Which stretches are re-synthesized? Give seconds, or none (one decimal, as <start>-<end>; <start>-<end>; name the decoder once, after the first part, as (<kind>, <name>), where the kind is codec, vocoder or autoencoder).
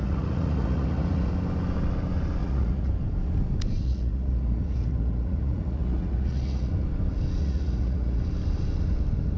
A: 0.0-1.3 (vocoder, Vocos); 2.4-2.9; 3.8-6.7; 7.4-8.2